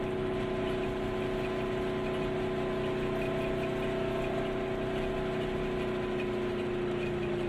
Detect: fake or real real